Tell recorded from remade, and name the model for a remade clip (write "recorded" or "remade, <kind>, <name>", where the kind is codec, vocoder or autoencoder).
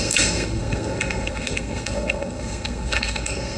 remade, codec, SNAC